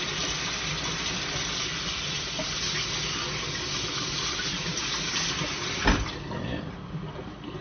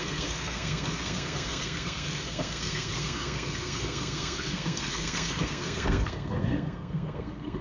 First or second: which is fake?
second